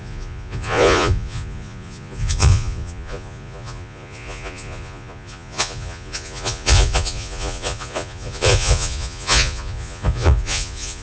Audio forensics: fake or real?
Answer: fake